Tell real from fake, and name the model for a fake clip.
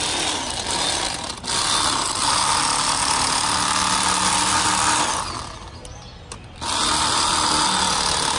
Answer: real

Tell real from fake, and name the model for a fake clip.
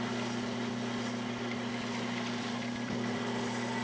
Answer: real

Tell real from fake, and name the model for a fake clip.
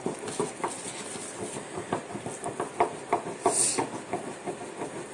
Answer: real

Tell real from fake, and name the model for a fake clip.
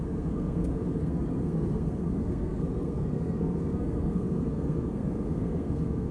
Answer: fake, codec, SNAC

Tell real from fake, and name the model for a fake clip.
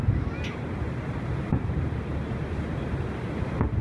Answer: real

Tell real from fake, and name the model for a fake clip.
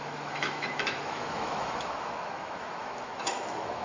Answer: fake, autoencoder, DAC-VAE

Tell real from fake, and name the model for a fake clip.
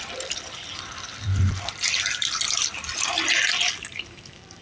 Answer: fake, vocoder, BigVGAN v2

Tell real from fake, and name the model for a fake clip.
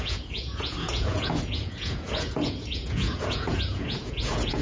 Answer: fake, vocoder, Vocos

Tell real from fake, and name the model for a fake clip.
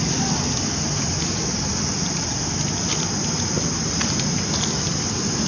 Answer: real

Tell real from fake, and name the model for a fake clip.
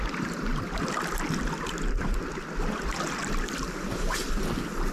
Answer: real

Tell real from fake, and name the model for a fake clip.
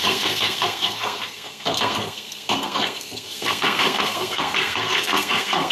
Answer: fake, codec, SNAC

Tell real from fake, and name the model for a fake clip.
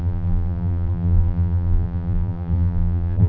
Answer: fake, vocoder, BigVGAN v2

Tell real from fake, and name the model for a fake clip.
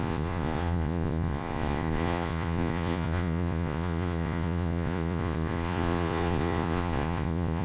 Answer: fake, vocoder, Vocos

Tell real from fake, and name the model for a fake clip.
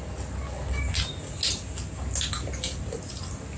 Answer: real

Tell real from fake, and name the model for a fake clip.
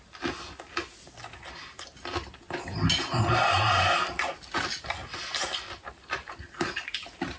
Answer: real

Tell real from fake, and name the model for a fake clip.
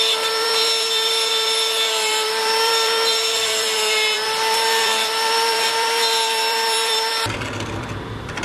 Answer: fake, vocoder, BigVGAN v2